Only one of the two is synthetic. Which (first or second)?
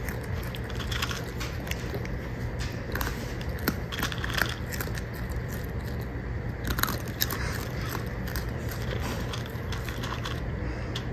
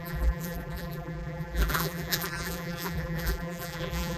second